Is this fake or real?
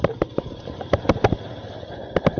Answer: real